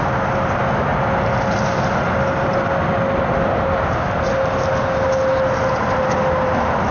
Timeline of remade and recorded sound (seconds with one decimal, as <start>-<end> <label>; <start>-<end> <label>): 0.0-6.9 recorded